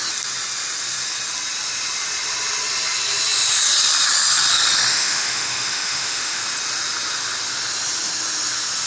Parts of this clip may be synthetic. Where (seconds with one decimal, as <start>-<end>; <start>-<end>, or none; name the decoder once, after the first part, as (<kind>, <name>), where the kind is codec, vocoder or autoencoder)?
4.9-6.4 (autoencoder, DAC-VAE)